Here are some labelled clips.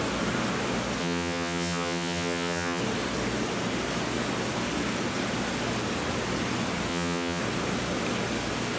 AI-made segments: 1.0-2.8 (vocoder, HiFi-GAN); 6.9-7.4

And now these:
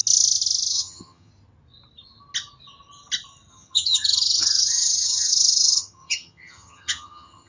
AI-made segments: 0.7-1.3 (vocoder, HiFi-GAN); 3.5-7.5

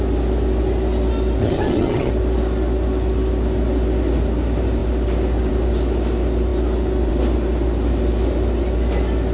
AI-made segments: 1.4-2.1 (vocoder, HiFi-GAN)